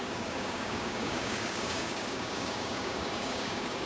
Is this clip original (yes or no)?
no